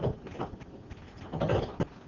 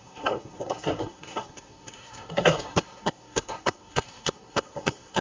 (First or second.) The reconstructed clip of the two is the second